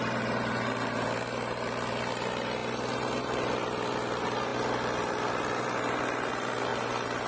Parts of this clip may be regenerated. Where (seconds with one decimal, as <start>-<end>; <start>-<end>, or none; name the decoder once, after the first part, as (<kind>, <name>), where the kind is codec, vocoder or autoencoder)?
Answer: none